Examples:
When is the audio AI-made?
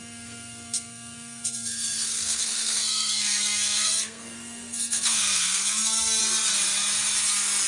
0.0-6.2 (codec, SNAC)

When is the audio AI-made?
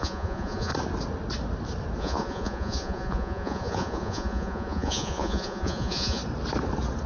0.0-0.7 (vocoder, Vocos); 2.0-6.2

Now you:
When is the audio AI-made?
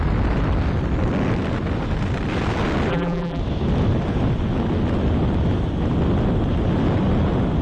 2.9-3.4 (vocoder, BigVGAN v2)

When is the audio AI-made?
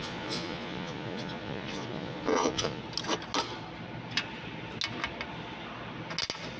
0.0-2.8 (vocoder, Vocos)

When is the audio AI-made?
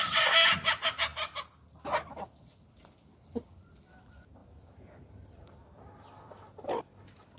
0.0-0.5 (vocoder, BigVGAN v2); 4.4-6.8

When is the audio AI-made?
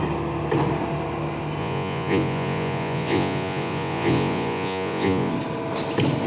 1.6-5.3 (vocoder, Vocos)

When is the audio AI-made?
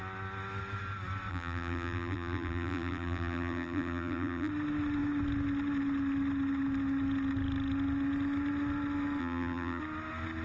1.3-4.5 (vocoder, BigVGAN v2); 9.2-9.8